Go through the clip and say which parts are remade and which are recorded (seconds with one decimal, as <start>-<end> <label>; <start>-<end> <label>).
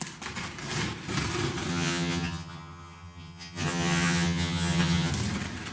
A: 0.0-1.7 recorded; 1.7-5.1 remade; 5.1-5.7 recorded